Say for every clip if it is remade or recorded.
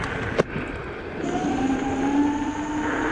recorded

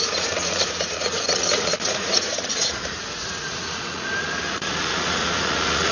remade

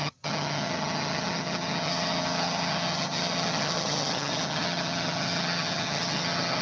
remade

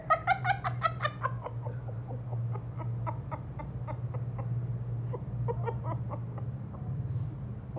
recorded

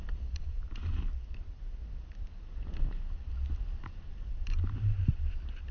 recorded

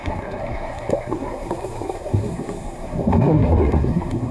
remade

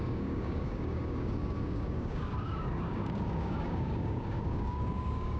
remade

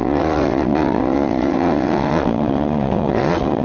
remade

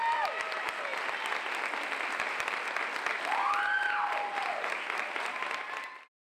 recorded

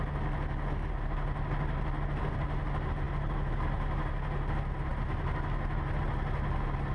recorded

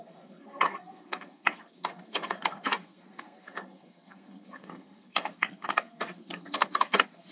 remade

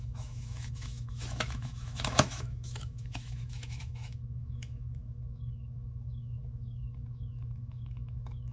remade